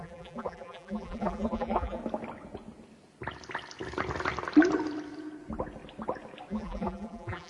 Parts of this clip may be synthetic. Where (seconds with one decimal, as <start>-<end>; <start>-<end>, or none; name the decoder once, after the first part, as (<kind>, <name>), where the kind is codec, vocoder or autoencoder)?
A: 0.0-2.0 (vocoder, BigVGAN v2); 6.5-7.5